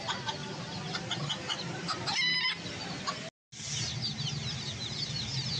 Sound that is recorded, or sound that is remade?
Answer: recorded